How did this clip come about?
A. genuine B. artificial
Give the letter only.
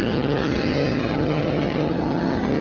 B